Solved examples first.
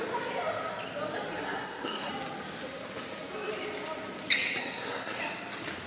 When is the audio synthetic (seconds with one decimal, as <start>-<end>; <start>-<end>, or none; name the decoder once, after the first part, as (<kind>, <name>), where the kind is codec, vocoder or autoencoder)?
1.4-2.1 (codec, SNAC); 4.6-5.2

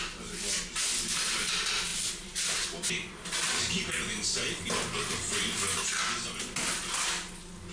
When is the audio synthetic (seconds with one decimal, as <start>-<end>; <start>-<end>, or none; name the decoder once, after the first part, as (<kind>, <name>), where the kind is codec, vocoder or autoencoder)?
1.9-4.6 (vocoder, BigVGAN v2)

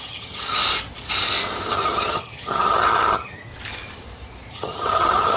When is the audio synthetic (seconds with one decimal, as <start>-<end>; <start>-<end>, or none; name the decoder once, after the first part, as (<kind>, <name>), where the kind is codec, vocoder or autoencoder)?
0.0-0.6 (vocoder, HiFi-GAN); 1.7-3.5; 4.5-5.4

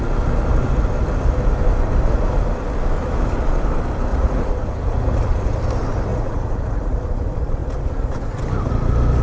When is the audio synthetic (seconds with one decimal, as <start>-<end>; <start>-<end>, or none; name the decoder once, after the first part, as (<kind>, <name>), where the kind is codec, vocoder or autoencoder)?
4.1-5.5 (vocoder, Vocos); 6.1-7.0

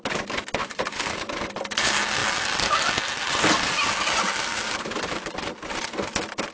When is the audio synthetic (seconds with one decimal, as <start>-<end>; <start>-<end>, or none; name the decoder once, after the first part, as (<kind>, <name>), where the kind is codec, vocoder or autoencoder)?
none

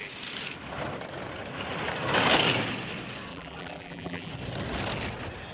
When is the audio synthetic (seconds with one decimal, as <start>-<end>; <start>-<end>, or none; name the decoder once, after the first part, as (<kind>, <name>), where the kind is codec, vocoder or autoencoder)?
3.3-4.3 (vocoder, BigVGAN v2)

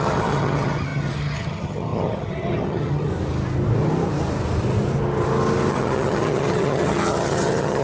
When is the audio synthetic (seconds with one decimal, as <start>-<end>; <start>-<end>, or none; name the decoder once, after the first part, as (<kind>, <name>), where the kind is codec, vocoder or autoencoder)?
0.0-3.1 (vocoder, HiFi-GAN); 5.7-7.8